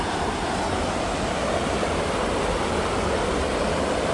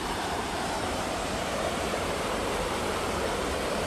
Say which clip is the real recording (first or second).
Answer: first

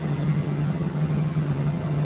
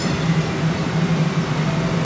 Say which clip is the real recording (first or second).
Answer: second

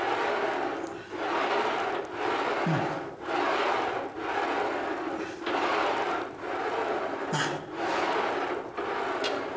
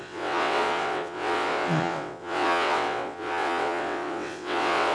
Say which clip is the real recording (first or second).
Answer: first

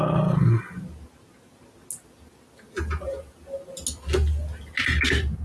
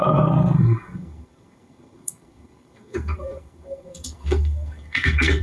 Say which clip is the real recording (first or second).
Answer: first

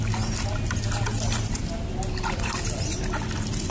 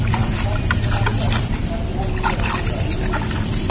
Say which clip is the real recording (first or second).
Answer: first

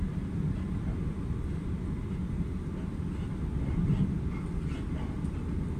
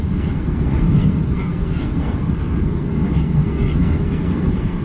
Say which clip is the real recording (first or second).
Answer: first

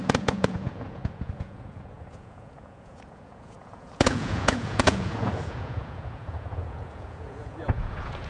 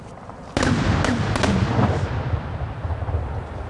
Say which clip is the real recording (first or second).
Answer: second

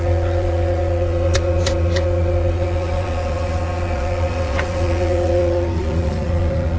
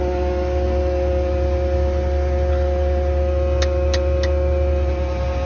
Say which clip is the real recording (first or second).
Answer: second